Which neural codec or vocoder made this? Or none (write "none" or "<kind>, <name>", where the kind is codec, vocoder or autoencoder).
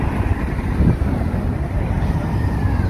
none